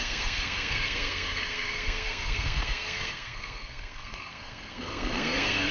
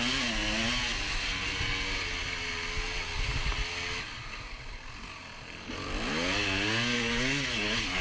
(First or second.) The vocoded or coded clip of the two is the first